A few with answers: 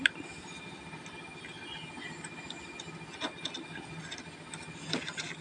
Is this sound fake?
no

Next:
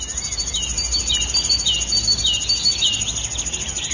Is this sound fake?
no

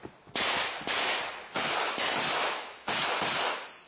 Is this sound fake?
no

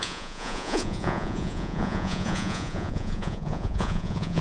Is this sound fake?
yes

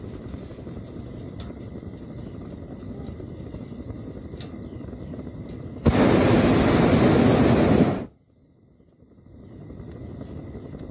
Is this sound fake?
no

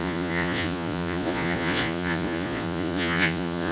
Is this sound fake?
yes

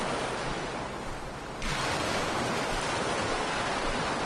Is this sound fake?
no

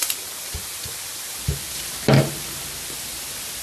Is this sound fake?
no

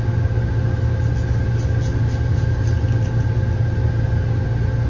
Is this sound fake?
no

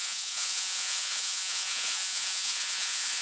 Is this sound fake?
yes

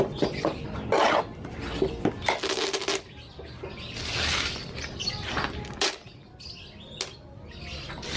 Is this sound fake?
no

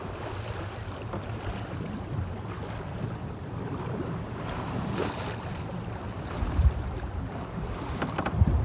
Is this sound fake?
yes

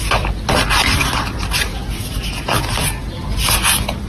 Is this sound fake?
no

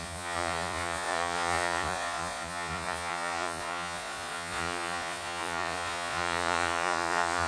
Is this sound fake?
yes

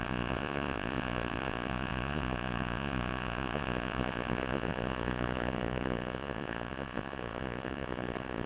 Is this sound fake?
yes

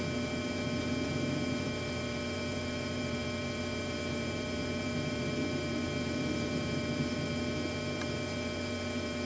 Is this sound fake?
yes